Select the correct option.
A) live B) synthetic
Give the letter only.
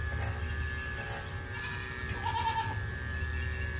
A